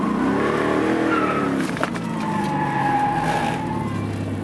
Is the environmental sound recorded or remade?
recorded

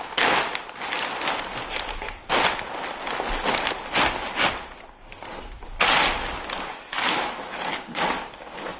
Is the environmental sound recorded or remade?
recorded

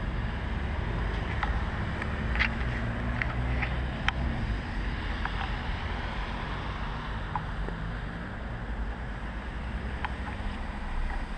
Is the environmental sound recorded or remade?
recorded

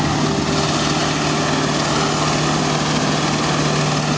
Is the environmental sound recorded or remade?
recorded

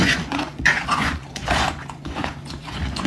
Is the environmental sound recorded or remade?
remade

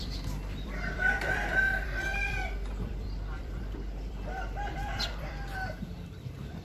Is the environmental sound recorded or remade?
remade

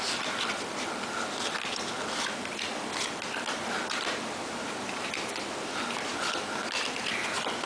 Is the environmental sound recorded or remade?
recorded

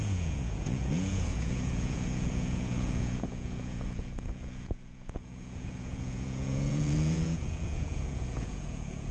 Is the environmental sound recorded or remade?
remade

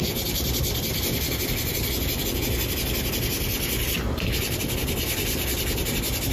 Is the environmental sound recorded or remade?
recorded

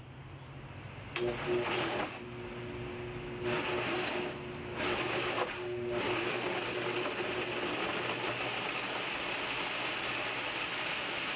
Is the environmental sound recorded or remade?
recorded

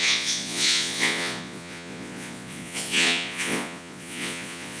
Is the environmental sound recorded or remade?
remade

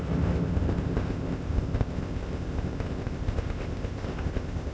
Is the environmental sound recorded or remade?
remade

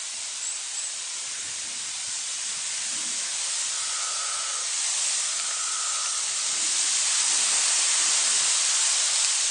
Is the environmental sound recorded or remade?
recorded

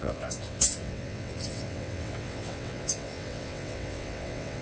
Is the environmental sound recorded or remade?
remade